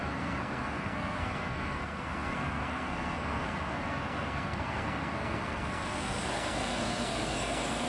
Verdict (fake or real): fake